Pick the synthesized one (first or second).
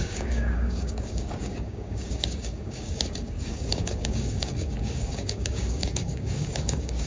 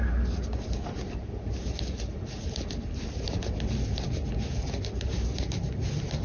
first